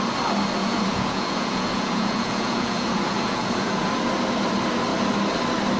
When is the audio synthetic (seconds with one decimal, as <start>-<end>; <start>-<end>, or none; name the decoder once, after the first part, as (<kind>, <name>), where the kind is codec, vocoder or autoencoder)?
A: 0.6-3.9 (vocoder, Vocos)